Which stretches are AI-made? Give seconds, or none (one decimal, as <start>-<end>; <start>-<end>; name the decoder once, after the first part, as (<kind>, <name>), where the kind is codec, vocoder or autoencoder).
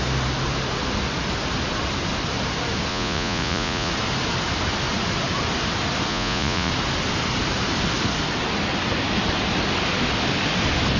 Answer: 2.9-3.9 (vocoder, Vocos); 6.1-6.7